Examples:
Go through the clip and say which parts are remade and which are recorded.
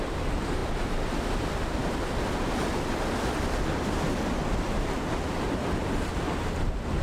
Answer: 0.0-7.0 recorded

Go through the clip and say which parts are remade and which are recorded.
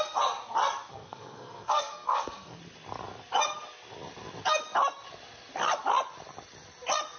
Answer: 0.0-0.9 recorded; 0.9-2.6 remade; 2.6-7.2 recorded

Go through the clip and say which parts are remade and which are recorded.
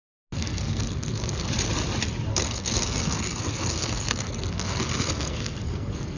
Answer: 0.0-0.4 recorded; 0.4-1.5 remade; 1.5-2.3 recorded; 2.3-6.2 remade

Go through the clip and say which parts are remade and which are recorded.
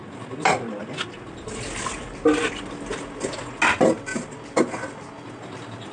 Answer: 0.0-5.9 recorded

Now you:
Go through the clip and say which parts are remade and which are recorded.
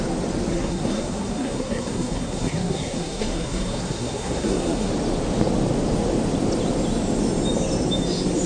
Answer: 0.0-0.5 recorded; 0.5-4.9 remade; 4.9-8.5 recorded